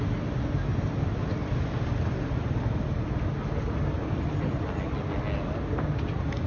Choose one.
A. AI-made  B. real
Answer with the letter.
B